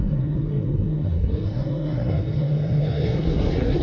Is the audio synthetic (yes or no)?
yes